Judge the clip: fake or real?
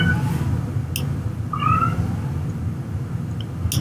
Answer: real